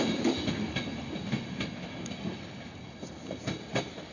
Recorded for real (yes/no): yes